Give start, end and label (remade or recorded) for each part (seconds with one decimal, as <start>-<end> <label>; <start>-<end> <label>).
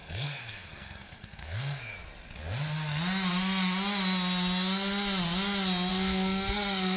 0.0-1.8 remade; 1.8-5.9 recorded; 5.9-7.0 remade